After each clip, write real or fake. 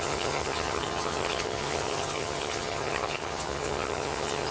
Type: fake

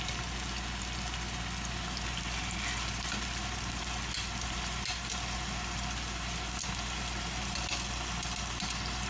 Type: real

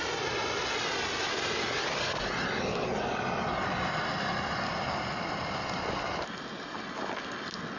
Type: real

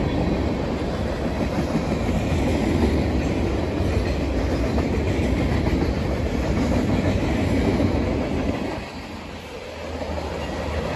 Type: real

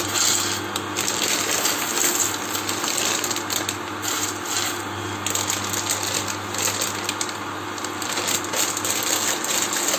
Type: real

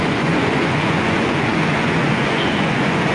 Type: fake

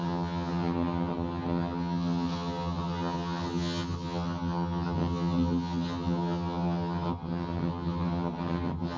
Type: fake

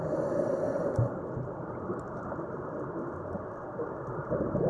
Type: real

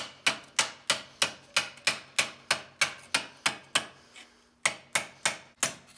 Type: real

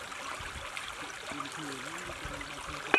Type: real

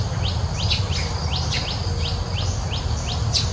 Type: real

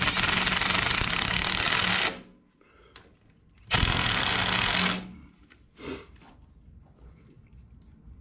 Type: real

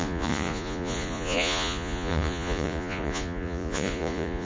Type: fake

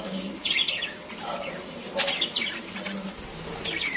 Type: real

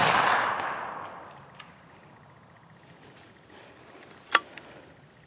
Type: real